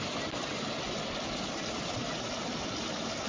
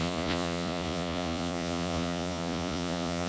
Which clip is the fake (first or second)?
second